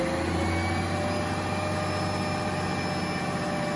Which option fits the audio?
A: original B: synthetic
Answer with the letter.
A